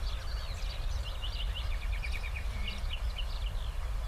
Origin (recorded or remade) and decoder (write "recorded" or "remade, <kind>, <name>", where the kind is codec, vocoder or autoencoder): remade, vocoder, BigVGAN v2